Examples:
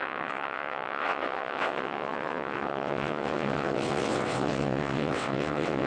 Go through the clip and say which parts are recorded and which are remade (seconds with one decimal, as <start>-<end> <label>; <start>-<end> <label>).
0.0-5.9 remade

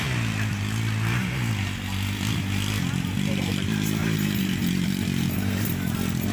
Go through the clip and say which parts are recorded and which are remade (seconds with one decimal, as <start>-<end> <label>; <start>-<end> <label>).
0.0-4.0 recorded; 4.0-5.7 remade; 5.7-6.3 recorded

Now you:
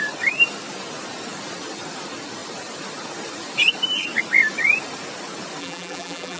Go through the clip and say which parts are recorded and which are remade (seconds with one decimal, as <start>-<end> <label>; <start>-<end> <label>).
0.0-5.6 recorded; 5.6-6.4 remade

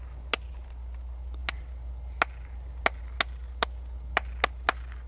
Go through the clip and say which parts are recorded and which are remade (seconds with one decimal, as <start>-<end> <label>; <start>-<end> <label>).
0.0-5.1 recorded

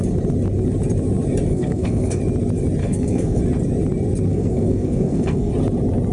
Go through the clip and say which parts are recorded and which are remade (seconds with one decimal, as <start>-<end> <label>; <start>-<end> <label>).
0.0-1.5 recorded; 1.5-2.2 remade; 2.2-2.8 recorded; 2.8-3.4 remade; 3.4-4.3 recorded; 4.3-5.5 remade; 5.5-6.1 recorded

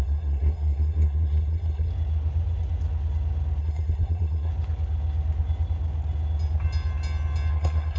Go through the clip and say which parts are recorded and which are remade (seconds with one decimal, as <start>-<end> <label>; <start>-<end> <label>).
0.0-1.9 remade; 1.9-3.6 recorded; 3.6-4.5 remade; 4.5-7.5 recorded; 7.5-8.0 remade

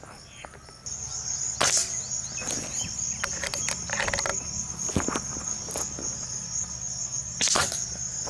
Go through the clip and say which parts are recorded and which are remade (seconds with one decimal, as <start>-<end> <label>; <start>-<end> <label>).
0.0-1.8 recorded; 1.8-3.6 remade; 3.6-8.3 recorded

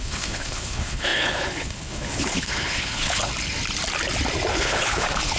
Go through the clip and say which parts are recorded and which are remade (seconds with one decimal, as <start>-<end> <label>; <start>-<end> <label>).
0.0-3.3 remade; 3.3-4.5 recorded; 4.5-5.4 remade